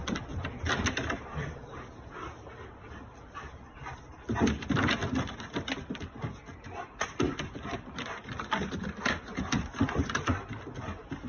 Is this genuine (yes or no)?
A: yes